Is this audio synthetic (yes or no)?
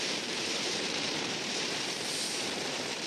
yes